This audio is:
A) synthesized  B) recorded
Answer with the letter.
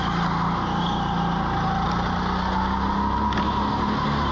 B